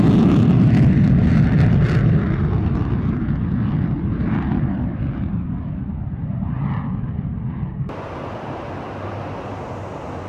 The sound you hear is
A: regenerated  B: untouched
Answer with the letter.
B